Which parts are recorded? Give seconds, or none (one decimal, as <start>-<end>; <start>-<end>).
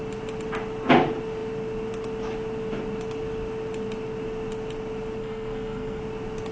0.0-5.2; 6.0-6.5